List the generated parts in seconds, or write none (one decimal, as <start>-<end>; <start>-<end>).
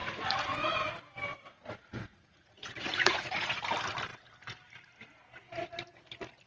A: 0.0-0.9; 1.3-3.6